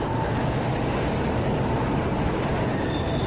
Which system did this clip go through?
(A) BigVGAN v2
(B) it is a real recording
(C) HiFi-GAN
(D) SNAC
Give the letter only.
B